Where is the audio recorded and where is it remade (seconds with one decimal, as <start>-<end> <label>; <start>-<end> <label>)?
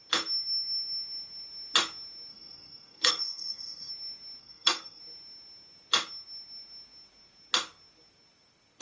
0.0-2.3 recorded; 2.3-3.9 remade; 3.9-4.4 recorded; 4.4-5.0 remade; 5.0-8.8 recorded